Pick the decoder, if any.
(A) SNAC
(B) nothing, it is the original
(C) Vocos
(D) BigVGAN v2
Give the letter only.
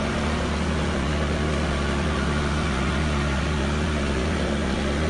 C